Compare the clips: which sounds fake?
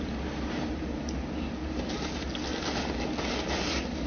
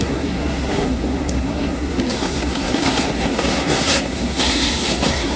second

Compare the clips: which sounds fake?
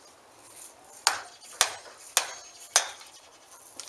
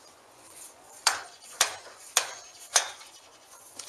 second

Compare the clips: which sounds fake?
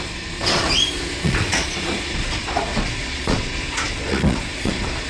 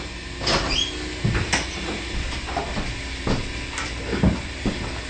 first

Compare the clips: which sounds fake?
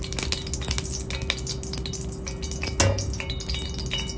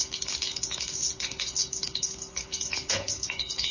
second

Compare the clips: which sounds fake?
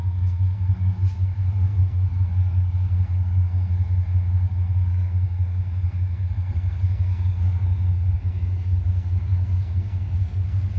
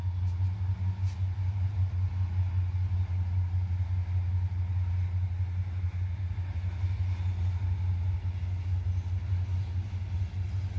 first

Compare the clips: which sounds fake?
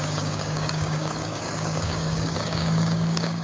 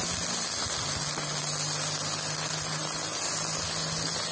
first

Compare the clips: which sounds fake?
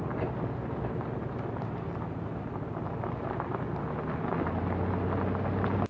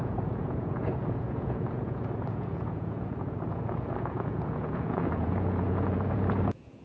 second